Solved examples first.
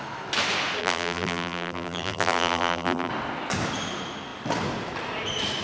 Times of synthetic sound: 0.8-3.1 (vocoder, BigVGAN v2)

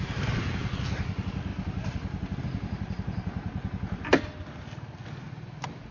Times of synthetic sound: none

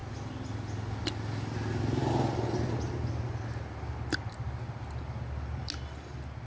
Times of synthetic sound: none

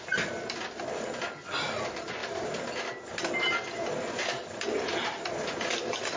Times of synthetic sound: none

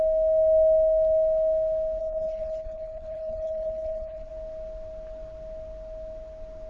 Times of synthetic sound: 2.0-4.3 (codec, HILCodec)